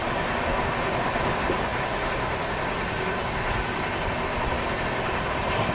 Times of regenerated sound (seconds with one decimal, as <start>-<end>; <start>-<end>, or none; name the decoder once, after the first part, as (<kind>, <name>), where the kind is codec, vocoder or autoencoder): none